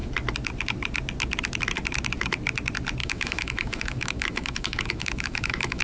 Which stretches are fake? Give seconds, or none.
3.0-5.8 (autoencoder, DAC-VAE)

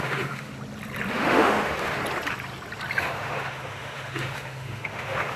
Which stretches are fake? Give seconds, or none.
0.0-0.5 (autoencoder, DAC-VAE); 1.1-2.0; 3.0-5.4

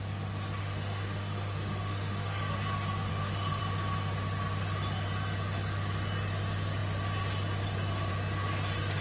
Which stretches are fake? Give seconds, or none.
0.6-2.5 (autoencoder, DAC-VAE); 3.1-3.6

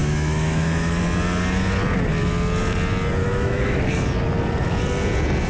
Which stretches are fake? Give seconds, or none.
0.0-1.0 (autoencoder, DAC-VAE); 3.2-3.8

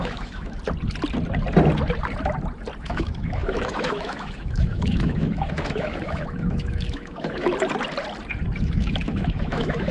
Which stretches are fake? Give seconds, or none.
0.0-0.6 (autoencoder, DAC-VAE); 2.8-7.5; 8.6-9.9